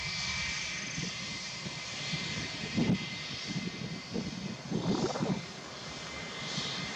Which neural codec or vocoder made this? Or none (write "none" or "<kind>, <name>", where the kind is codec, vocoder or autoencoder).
none